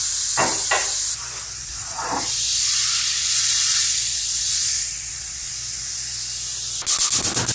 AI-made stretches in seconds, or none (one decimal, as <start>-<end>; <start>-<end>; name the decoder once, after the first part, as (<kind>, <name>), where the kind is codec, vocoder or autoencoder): 1.6-2.6 (vocoder, Vocos); 3.2-5.5